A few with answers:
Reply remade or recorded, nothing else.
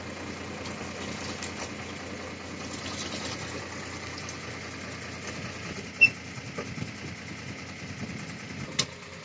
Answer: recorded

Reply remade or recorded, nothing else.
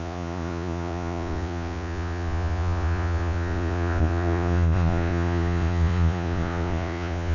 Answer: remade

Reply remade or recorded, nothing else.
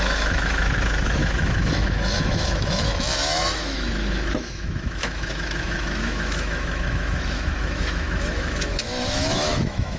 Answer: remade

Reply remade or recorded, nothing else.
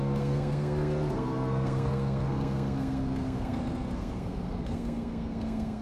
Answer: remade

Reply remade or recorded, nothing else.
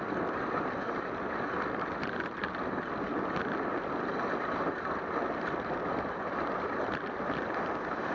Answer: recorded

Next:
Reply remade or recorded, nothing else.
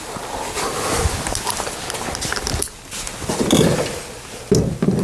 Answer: recorded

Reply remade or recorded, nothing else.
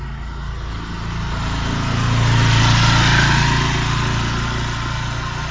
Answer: recorded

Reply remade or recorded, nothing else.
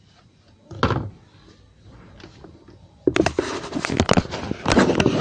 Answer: recorded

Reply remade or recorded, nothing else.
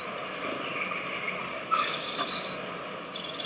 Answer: recorded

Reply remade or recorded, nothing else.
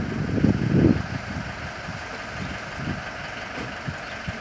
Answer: recorded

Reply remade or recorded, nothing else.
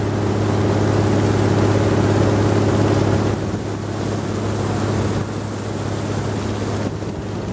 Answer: recorded